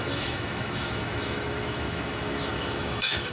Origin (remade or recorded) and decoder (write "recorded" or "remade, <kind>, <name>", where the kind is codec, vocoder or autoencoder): remade, autoencoder, DAC-VAE